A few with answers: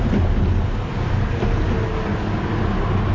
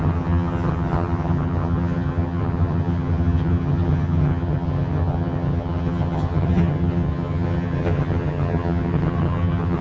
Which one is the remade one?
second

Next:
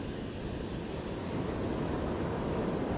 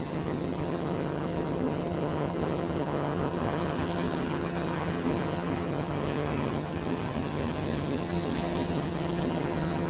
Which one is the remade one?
second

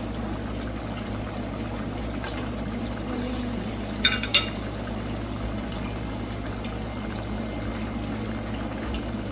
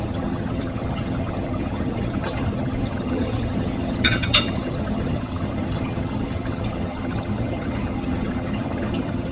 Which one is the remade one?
second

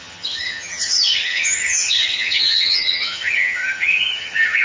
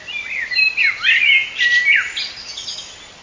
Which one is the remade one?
first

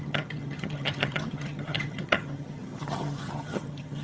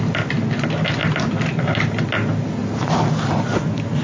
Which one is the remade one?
first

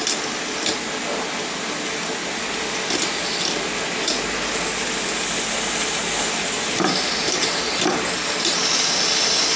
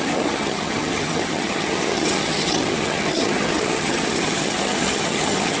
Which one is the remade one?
second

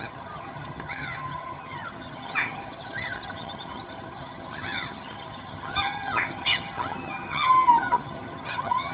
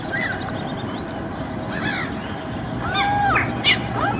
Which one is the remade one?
first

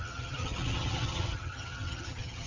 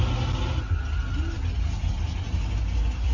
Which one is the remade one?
first